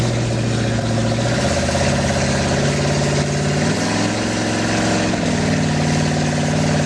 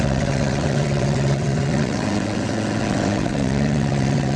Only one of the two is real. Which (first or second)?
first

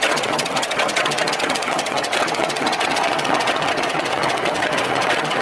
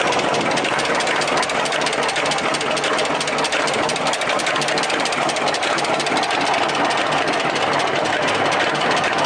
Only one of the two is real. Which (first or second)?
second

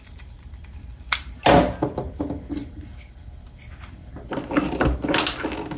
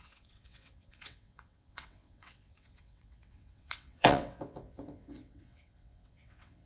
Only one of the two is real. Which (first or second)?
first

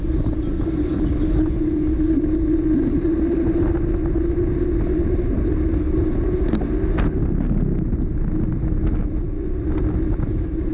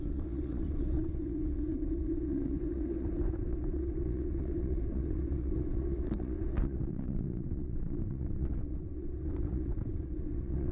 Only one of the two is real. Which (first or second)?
first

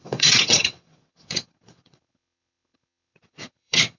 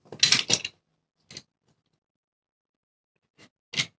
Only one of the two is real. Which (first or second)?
second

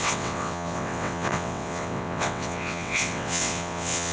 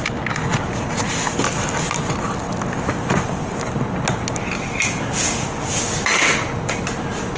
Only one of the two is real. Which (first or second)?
second